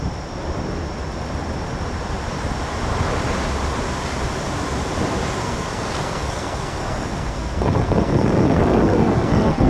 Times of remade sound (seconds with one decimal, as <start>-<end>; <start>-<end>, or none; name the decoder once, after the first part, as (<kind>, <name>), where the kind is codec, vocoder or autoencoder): 5.4-9.7 (codec, SNAC)